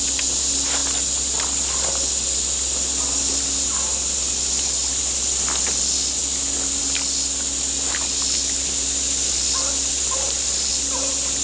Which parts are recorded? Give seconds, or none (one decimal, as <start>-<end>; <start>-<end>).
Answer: 0.0-11.4